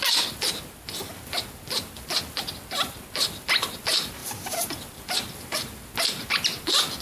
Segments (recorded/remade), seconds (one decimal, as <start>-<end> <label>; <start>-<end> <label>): 0.0-7.0 recorded